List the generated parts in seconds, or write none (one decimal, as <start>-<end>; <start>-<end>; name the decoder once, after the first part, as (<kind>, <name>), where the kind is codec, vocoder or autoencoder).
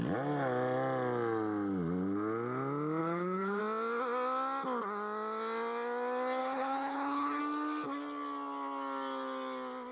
3.0-3.6 (codec, HILCodec); 6.4-7.4